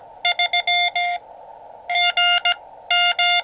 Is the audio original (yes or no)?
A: yes